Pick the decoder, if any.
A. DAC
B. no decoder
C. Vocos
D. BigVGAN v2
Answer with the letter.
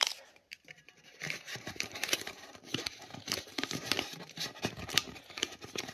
D